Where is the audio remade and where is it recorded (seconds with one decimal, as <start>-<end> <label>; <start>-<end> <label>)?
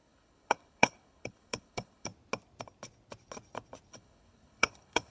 0.0-2.1 remade; 2.1-3.9 recorded; 3.9-5.1 remade